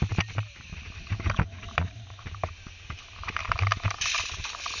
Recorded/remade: recorded